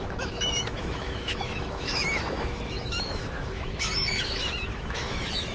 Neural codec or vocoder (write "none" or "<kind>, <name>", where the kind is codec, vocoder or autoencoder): autoencoder, DAC-VAE